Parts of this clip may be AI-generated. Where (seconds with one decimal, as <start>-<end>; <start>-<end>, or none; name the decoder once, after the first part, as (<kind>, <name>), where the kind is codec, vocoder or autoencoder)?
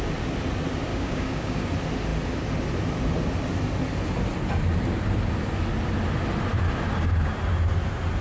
0.9-1.7 (codec, DAC)